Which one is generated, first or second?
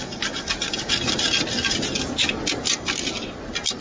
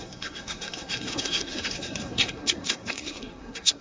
second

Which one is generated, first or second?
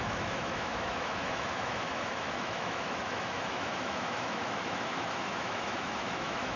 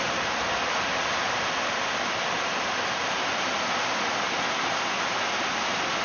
first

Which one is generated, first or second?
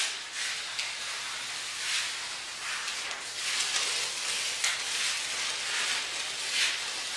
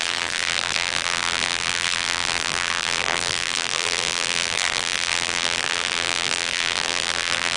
second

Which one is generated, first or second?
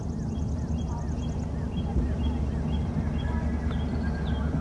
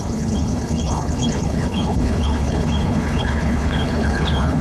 second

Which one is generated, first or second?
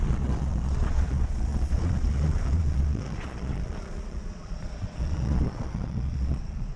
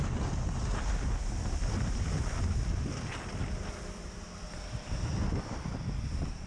first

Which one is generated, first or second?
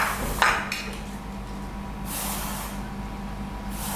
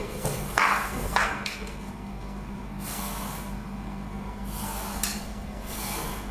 second